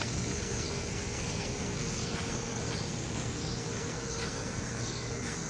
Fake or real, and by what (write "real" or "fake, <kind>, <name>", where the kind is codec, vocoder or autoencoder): fake, codec, SNAC